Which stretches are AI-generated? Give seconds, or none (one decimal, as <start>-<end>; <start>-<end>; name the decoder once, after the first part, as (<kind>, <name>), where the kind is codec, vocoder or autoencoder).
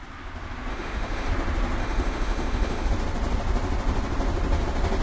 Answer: 0.7-1.3 (autoencoder, DAC-VAE); 1.8-2.9